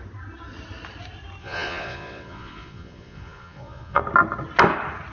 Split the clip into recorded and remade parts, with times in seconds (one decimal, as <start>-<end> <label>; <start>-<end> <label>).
0.0-1.4 recorded; 1.4-4.0 remade; 4.0-5.1 recorded